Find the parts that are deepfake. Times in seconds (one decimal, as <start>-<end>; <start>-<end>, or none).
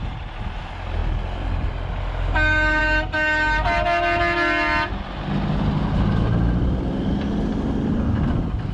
none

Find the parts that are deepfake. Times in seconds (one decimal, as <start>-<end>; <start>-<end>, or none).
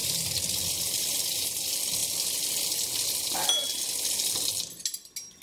none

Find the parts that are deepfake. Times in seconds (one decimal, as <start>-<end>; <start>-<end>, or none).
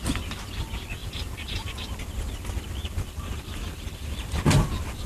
1.0-1.7; 2.8-4.3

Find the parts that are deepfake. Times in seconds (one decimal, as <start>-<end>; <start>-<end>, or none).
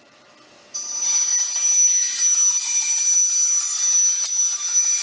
0.0-5.0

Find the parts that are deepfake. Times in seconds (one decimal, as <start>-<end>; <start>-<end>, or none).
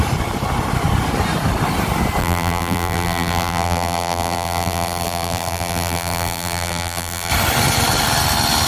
2.2-7.3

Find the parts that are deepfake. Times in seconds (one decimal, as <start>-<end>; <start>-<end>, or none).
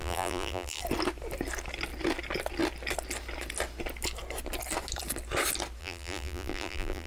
0.0-0.8; 5.8-7.1